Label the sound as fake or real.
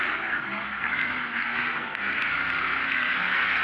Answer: fake